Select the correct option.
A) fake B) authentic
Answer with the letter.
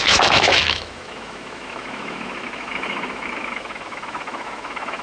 A